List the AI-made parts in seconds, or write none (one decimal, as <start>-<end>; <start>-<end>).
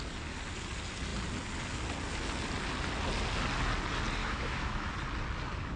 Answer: 4.2-4.9